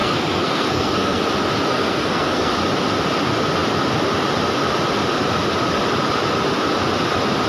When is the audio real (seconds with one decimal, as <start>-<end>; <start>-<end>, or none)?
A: 1.2-1.7; 2.5-7.5